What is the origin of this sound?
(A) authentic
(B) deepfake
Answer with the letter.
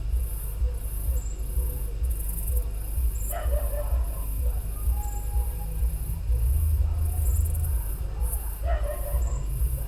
A